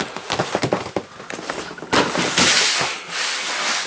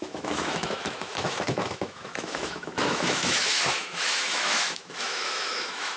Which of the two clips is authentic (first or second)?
first